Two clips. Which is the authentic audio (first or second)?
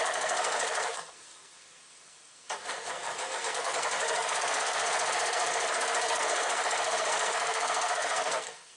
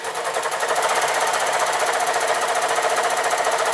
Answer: second